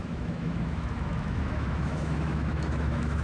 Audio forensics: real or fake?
fake